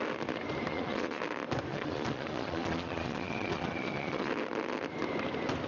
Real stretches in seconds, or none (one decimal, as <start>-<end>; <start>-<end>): 0.0-0.7; 1.2-1.7; 4.3-5.7

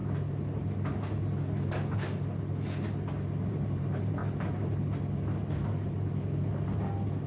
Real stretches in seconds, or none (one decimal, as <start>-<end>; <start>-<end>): 0.0-3.5; 4.2-7.3

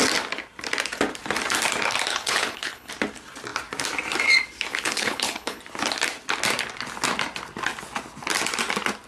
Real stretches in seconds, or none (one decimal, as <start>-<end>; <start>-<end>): 0.0-2.1; 2.9-4.7; 5.6-9.1